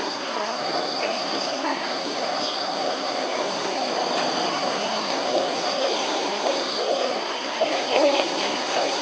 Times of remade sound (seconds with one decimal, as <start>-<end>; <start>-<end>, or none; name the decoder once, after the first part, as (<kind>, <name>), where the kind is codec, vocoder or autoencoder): 0.0-3.9 (codec, SNAC); 4.5-9.0